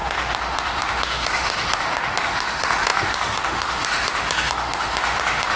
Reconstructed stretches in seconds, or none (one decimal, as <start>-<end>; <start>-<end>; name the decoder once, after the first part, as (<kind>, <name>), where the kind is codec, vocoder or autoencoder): 0.0-5.6 (autoencoder, DAC-VAE)